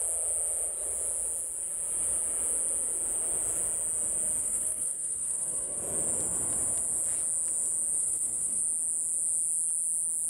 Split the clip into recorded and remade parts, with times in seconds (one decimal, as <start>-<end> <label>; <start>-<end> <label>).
0.0-4.4 recorded; 4.4-5.8 remade; 5.8-8.0 recorded; 8.0-8.6 remade; 8.6-10.3 recorded

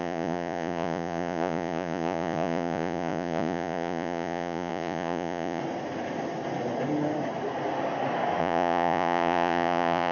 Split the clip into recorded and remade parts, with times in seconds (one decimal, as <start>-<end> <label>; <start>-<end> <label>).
0.0-5.6 remade; 5.6-8.4 recorded; 8.4-10.1 remade

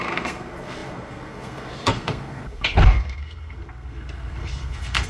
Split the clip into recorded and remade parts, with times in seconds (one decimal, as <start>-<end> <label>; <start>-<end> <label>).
0.0-5.1 remade

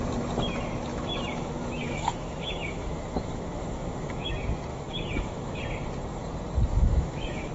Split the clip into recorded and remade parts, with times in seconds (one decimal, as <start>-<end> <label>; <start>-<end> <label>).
0.0-0.9 recorded; 0.9-4.3 remade; 4.3-4.7 recorded; 4.7-5.6 remade; 5.6-6.7 recorded; 6.7-7.5 remade

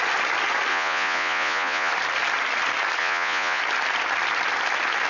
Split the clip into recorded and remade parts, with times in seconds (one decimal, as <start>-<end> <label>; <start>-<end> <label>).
0.0-0.7 recorded; 0.7-1.9 remade; 1.9-3.0 recorded; 3.0-3.6 remade; 3.6-5.1 recorded

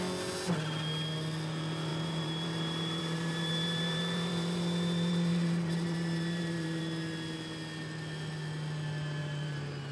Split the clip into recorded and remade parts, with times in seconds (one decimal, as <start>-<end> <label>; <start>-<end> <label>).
0.0-1.9 recorded; 1.9-6.8 remade; 6.8-9.2 recorded; 9.2-9.9 remade